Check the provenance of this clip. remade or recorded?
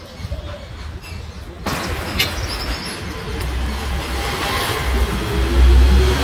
recorded